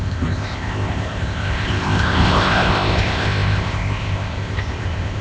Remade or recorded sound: remade